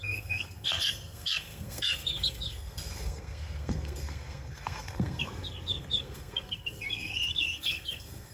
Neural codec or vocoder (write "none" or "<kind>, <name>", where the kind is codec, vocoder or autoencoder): codec, SNAC